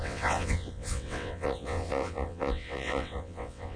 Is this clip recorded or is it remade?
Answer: remade